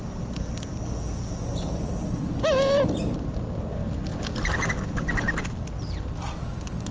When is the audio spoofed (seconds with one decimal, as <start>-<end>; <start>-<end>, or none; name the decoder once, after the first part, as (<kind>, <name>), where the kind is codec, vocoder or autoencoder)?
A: none